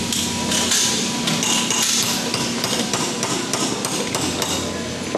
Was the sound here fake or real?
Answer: real